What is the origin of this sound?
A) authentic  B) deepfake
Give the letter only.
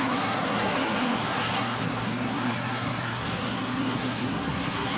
B